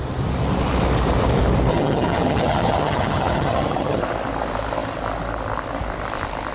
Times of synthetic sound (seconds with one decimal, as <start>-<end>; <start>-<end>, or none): 1.7-4.0